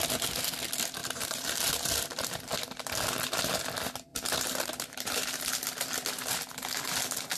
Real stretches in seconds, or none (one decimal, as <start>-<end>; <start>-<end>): 0.0-1.0; 1.7-4.1; 5.5-7.4